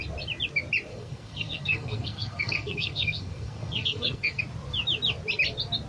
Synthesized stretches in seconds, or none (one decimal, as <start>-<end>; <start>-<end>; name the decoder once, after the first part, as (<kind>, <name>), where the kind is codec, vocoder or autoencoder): 0.9-4.4 (codec, SNAC)